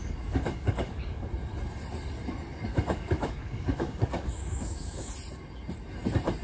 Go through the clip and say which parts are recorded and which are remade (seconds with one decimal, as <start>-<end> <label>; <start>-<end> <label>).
0.0-1.3 remade; 1.3-2.7 recorded; 2.7-5.1 remade; 5.1-6.4 recorded